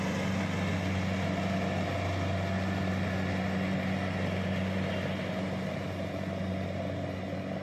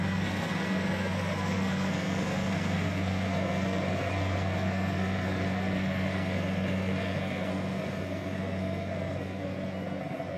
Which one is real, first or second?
first